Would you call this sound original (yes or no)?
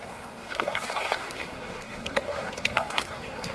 no